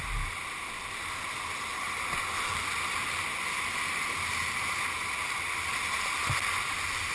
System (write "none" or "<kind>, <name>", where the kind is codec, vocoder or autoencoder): none